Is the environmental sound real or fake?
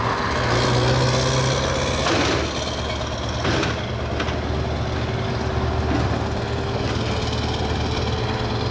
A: real